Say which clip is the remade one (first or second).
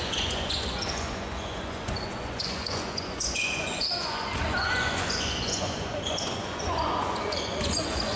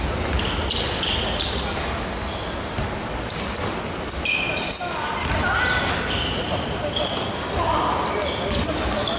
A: first